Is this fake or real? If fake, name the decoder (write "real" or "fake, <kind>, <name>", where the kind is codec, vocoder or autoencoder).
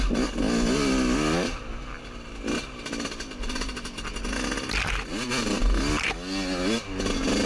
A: real